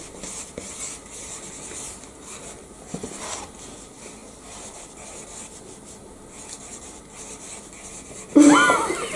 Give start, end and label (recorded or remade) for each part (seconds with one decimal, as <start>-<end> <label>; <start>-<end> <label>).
0.0-9.2 recorded